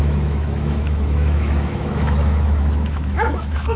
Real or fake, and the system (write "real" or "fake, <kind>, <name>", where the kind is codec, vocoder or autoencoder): fake, autoencoder, DAC-VAE